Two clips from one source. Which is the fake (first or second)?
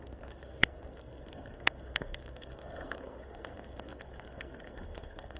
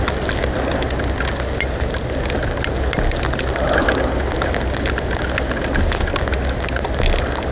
first